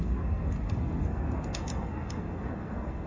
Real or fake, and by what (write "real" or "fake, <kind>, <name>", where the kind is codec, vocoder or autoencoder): fake, codec, SNAC